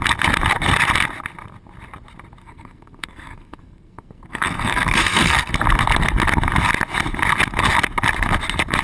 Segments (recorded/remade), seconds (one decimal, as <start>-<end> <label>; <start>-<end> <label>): 0.0-2.4 recorded; 2.4-5.5 remade; 5.5-8.8 recorded